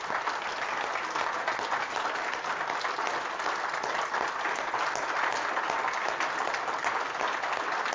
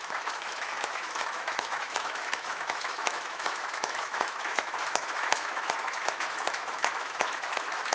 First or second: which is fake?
second